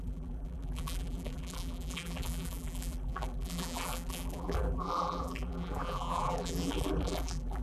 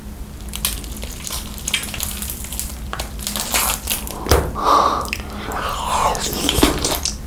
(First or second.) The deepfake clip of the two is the first